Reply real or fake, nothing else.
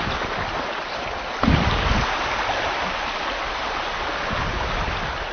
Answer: real